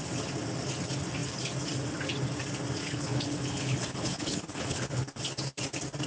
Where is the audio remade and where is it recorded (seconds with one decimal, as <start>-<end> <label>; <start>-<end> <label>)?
0.0-2.8 recorded; 2.8-5.2 remade; 5.2-6.1 recorded